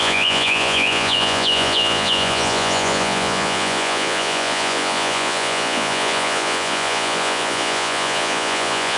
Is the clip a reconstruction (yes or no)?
yes